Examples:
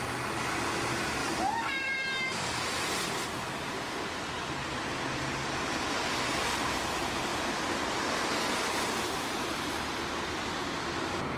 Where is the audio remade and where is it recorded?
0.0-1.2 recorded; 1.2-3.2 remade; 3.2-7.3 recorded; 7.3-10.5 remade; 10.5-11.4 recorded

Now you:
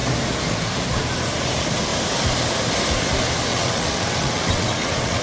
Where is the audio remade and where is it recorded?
0.0-3.5 recorded; 3.5-5.2 remade

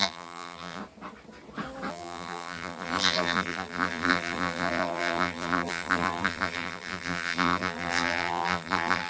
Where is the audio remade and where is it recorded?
0.0-0.8 remade; 0.8-1.9 recorded; 1.9-9.1 remade

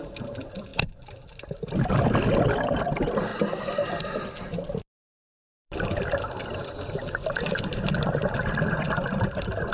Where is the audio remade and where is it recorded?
0.0-6.6 remade; 6.6-7.5 recorded; 7.5-9.7 remade

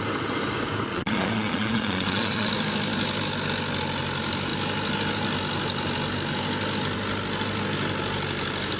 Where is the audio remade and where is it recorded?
0.0-0.9 recorded; 0.9-2.5 remade; 2.5-8.8 recorded

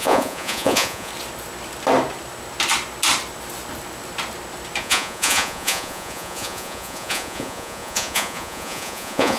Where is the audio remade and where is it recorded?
0.0-1.1 remade; 1.1-4.8 recorded; 4.8-9.4 remade

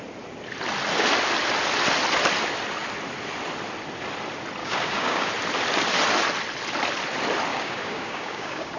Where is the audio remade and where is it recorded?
0.0-4.6 recorded; 4.6-5.3 remade; 5.3-7.5 recorded; 7.5-8.8 remade

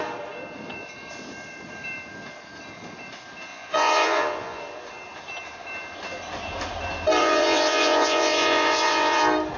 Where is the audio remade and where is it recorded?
0.0-3.5 recorded; 3.5-4.6 remade; 4.6-7.2 recorded; 7.2-9.2 remade; 9.2-9.6 recorded